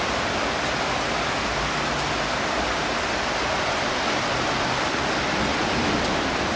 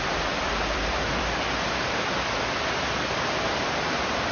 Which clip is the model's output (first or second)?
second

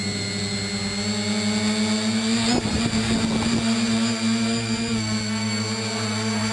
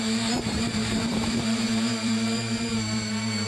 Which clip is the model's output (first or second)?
second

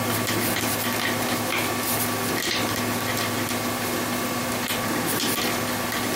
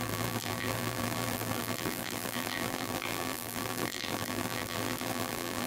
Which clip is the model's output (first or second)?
second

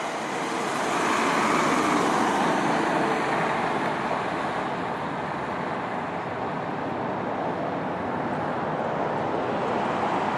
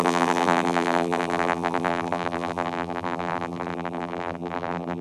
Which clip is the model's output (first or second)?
second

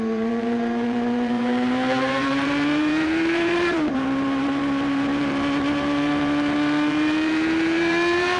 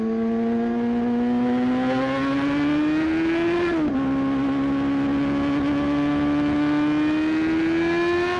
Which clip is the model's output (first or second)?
first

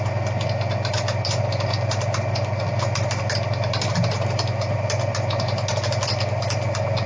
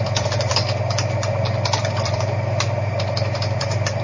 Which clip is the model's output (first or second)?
second